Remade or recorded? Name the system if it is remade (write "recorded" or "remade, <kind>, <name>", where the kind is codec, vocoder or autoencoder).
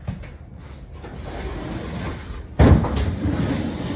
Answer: recorded